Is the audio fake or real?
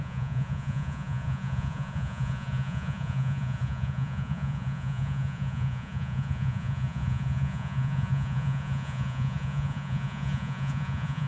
fake